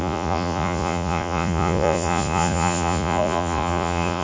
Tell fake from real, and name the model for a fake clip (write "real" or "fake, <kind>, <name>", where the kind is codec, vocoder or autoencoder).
fake, vocoder, Vocos